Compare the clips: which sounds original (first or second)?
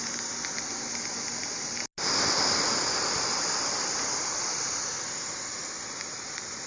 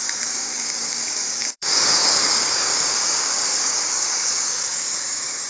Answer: first